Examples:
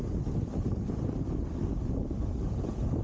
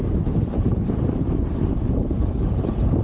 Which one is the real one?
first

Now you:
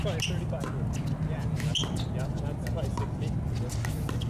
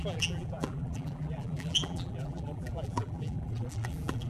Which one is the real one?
first